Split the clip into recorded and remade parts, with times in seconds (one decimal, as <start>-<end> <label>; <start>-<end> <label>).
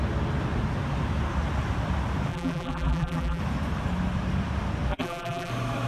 0.0-2.3 recorded; 2.3-3.4 remade; 3.4-4.9 recorded; 4.9-5.5 remade; 5.5-5.9 recorded